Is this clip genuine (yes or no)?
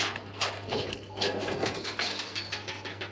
no